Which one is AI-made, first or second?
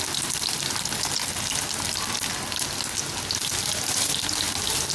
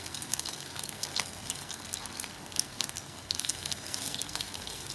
second